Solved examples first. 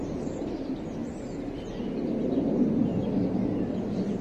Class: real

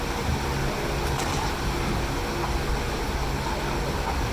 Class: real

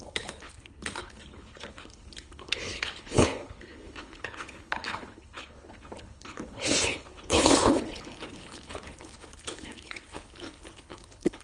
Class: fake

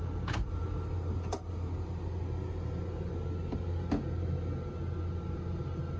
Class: real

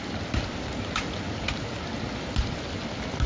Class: real